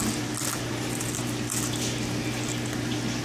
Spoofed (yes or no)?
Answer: no